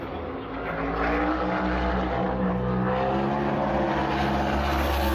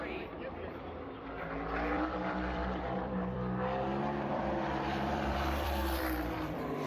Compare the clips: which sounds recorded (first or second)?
first